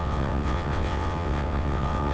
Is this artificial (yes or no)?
yes